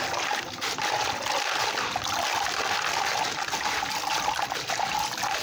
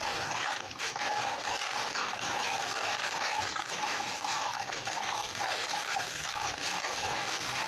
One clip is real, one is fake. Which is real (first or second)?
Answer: first